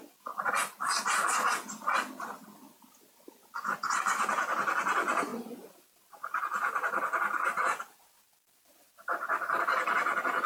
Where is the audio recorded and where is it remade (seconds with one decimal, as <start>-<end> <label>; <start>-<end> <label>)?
0.0-5.3 recorded; 5.3-6.4 remade; 6.4-7.4 recorded; 7.4-9.6 remade; 9.6-10.5 recorded